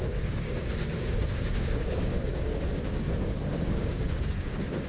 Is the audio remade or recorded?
remade